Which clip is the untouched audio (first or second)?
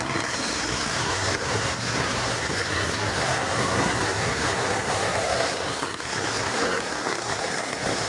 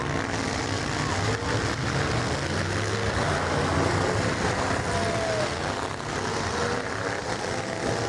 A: second